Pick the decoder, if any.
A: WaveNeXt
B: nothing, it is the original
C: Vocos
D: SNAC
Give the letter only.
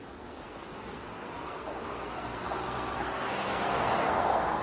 D